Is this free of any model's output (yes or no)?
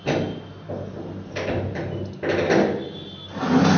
yes